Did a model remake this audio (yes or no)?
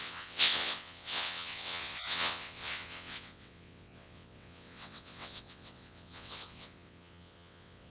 yes